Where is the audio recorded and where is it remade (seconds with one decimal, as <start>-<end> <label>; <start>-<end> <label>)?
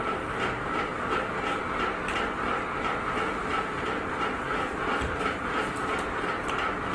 0.0-6.9 recorded